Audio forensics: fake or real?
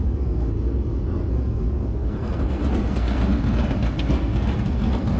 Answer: fake